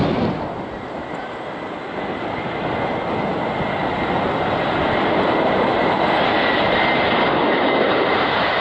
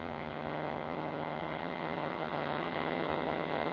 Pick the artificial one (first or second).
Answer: second